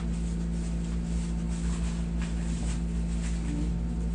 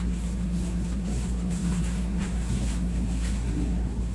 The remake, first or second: second